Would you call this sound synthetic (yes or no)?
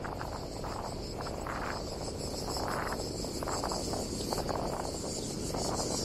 no